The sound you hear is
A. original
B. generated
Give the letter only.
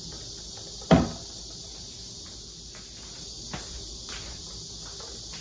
A